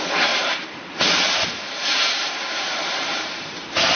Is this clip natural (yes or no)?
no